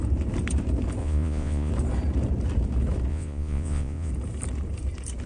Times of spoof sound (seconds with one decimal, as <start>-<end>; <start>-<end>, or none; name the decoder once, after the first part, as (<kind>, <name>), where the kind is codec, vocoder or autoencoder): 1.0-1.7 (vocoder, Vocos); 3.1-4.1